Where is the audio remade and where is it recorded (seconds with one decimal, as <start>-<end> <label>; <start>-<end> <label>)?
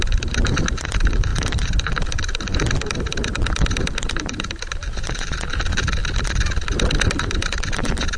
0.0-6.0 remade; 6.0-7.1 recorded; 7.1-8.2 remade